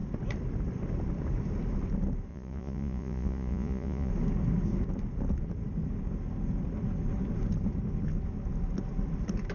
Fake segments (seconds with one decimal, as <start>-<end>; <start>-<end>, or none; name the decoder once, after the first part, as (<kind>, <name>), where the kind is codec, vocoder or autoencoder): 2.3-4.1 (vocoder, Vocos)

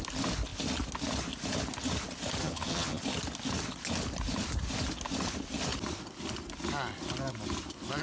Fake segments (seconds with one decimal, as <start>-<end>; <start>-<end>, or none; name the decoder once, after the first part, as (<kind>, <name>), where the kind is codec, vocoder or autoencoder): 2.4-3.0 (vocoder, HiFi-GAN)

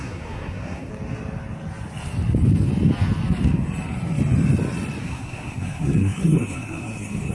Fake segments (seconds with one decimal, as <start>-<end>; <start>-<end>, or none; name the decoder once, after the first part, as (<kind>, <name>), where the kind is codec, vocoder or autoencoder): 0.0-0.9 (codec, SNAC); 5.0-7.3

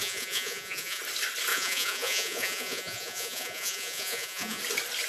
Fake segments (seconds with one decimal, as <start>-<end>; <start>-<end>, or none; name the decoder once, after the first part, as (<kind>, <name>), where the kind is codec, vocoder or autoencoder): 0.0-1.0 (vocoder, Vocos); 1.5-4.6